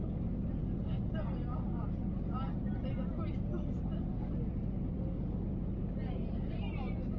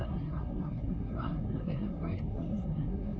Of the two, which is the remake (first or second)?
second